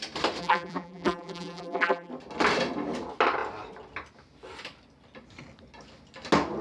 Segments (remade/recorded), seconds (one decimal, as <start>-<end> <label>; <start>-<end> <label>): 0.0-0.4 recorded; 0.4-2.1 remade; 2.1-6.6 recorded

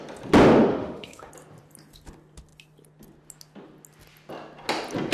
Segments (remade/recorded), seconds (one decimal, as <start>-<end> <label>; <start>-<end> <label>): 0.0-0.7 recorded; 0.7-1.3 remade; 1.3-5.1 recorded

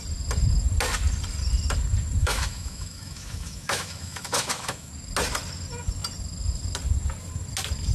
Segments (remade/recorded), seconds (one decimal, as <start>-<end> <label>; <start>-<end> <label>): 0.0-2.2 recorded; 2.2-4.9 remade; 4.9-7.9 recorded

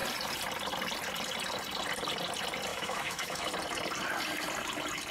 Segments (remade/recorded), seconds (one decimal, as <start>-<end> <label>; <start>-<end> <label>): 0.0-2.7 recorded; 2.7-3.5 remade; 3.5-5.1 recorded

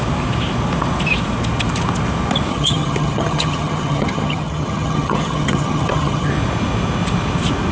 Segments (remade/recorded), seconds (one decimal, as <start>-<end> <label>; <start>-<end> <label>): 0.0-2.5 recorded; 2.5-6.3 remade; 6.3-7.7 recorded